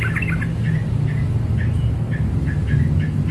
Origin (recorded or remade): recorded